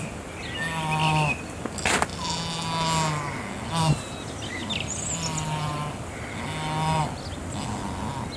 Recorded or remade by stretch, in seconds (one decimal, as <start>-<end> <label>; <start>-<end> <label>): 0.0-8.4 recorded